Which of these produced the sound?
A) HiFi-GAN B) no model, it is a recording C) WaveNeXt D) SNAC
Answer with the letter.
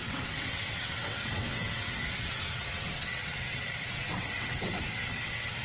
C